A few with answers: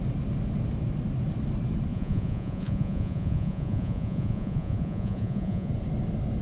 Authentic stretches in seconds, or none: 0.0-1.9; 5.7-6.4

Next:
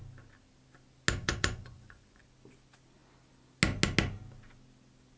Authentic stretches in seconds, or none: 0.0-1.2; 2.2-5.2

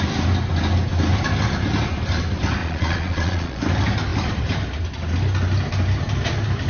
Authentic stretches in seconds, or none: 0.0-2.6; 3.6-6.7

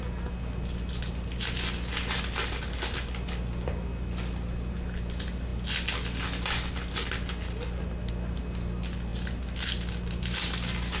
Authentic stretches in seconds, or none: 0.0-11.0